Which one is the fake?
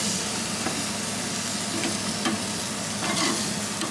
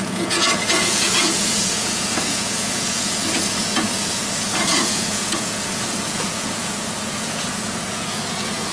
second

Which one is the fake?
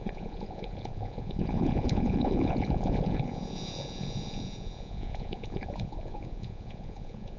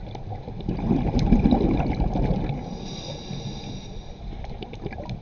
first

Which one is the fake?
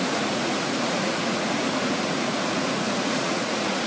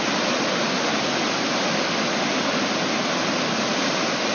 first